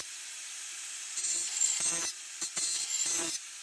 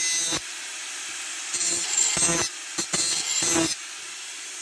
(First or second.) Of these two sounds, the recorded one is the second